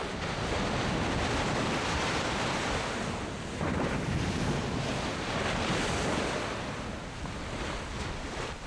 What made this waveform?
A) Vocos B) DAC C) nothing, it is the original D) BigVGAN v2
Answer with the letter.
C